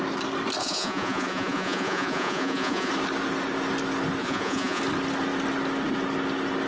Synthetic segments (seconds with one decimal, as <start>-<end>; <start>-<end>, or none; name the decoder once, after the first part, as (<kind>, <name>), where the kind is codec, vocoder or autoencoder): 0.6-2.9 (vocoder, Vocos); 4.2-4.8